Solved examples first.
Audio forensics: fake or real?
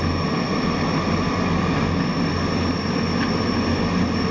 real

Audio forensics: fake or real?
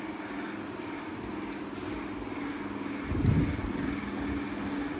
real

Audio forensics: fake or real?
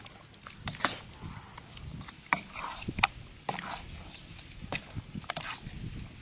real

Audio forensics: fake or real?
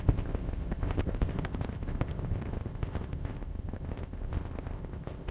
fake